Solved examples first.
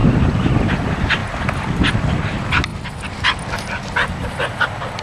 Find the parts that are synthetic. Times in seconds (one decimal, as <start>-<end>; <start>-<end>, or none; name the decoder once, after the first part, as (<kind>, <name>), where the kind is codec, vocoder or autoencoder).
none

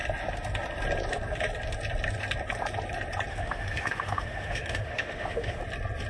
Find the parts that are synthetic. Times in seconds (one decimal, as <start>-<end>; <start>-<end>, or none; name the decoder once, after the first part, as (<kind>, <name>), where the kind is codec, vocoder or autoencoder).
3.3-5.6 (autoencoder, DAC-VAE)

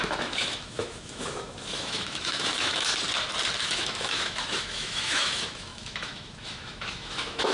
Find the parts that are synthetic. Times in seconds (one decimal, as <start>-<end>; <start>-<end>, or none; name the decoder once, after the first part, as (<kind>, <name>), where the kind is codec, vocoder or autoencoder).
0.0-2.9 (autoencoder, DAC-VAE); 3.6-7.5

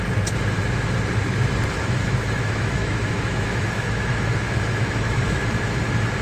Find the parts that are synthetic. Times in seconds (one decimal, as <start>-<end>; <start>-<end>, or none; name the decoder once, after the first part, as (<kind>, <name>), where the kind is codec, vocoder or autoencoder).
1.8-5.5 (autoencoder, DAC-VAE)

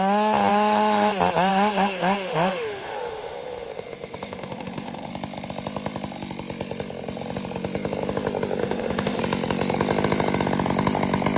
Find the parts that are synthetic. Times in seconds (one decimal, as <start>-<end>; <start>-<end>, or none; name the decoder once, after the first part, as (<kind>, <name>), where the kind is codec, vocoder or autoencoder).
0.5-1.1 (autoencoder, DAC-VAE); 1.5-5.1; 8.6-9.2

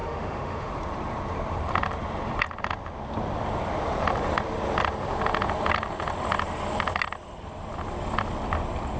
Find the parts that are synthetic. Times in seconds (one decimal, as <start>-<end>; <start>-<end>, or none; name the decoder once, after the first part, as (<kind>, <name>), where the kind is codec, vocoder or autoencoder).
0.0-0.7 (autoencoder, DAC-VAE)